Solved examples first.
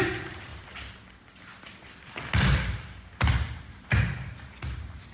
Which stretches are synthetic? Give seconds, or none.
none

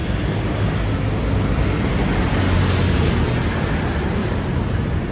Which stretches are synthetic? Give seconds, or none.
4.2-5.1 (vocoder, BigVGAN v2)

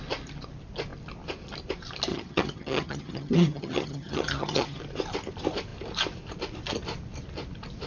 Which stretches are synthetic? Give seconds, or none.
2.1-4.8 (vocoder, HiFi-GAN)